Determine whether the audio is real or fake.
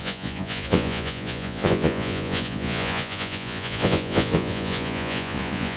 fake